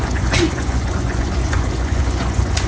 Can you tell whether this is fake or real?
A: fake